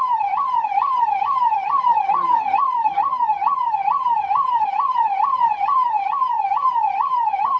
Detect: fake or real fake